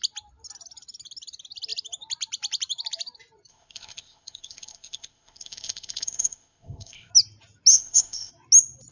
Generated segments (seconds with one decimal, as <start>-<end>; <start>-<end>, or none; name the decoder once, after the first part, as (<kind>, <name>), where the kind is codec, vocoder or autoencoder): 3.5-7.1 (codec, ZipCodec); 7.7-8.3